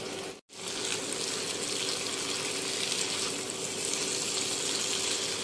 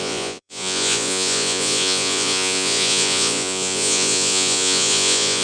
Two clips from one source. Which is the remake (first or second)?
second